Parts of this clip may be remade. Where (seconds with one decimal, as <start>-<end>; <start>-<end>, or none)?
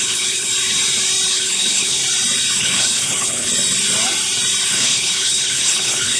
0.0-0.5; 1.3-2.0; 2.6-3.5; 4.7-6.2